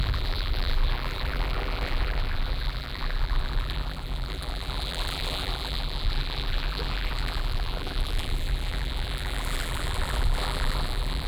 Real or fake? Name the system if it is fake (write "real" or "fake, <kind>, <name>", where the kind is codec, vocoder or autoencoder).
fake, vocoder, BigVGAN v2